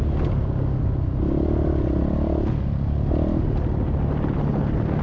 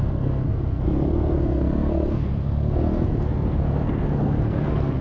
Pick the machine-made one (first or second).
second